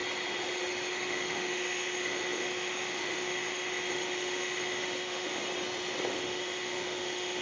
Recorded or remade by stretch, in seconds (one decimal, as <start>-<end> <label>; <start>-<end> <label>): 0.0-0.9 recorded; 0.9-5.4 remade; 5.4-6.1 recorded; 6.1-7.4 remade